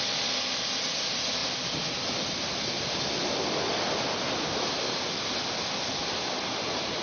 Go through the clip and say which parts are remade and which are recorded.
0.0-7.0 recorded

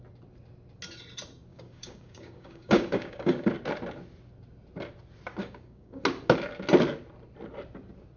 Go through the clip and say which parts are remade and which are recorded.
0.0-1.5 recorded; 1.5-3.5 remade; 3.5-5.4 recorded; 5.4-6.0 remade; 6.0-8.2 recorded

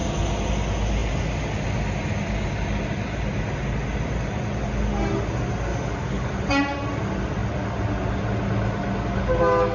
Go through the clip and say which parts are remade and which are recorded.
0.0-5.7 recorded; 5.7-6.3 remade; 6.3-9.7 recorded

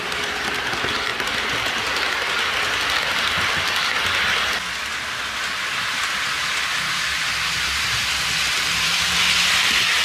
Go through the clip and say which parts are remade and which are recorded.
0.0-10.0 recorded